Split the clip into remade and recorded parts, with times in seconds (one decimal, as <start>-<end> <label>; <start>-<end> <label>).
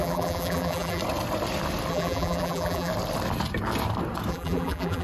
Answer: 0.0-1.0 remade; 1.0-1.9 recorded; 1.9-2.9 remade; 2.9-4.3 recorded; 4.3-5.0 remade